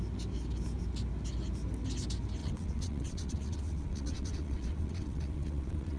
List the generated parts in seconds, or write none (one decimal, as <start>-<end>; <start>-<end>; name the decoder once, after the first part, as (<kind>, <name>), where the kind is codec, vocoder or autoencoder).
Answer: 2.4-6.0 (vocoder, WaveNeXt)